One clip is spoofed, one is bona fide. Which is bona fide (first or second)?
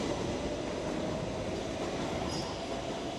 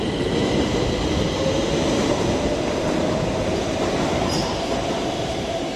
first